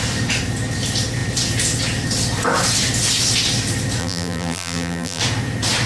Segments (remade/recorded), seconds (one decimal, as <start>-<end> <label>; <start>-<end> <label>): 0.0-4.0 recorded; 4.0-5.2 remade; 5.2-5.9 recorded